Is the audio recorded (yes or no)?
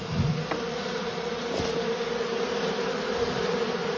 yes